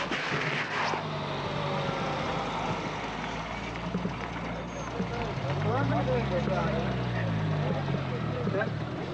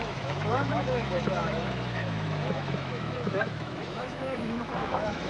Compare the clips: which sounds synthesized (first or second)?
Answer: second